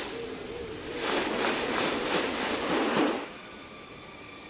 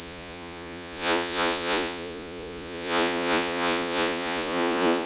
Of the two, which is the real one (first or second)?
first